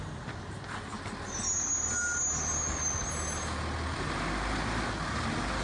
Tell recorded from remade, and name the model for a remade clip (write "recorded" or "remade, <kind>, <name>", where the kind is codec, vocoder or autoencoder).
recorded